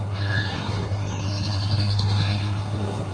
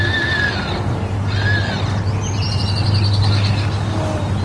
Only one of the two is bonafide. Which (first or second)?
second